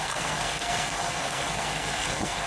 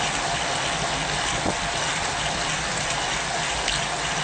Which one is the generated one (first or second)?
first